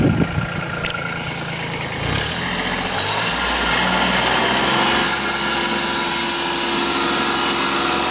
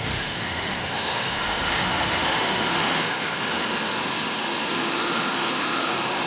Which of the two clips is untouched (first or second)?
first